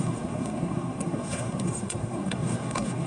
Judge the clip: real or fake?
fake